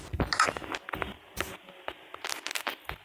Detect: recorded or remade recorded